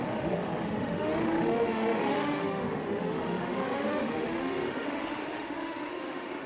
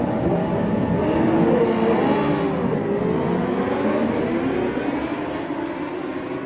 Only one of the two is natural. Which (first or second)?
second